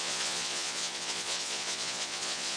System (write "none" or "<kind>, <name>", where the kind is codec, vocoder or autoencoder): vocoder, Vocos